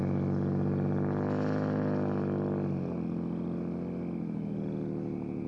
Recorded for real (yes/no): yes